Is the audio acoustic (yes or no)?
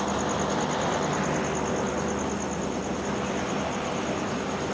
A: yes